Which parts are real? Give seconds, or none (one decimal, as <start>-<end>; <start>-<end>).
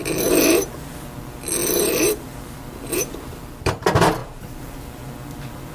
0.0-1.6; 3.6-4.2; 5.0-5.7